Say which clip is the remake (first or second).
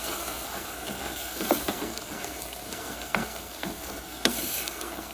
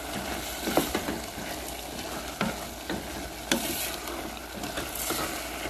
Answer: first